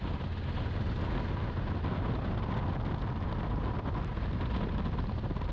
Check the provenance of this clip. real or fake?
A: real